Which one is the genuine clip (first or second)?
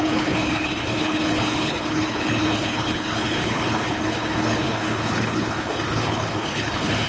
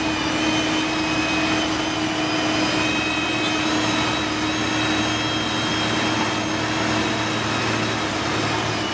second